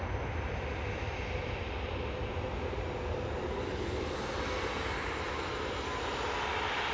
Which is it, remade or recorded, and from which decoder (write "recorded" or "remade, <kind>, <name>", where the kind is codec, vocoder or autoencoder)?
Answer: recorded